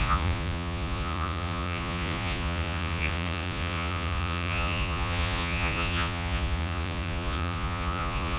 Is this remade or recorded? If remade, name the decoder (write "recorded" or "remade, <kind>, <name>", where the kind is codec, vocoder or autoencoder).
remade, vocoder, Vocos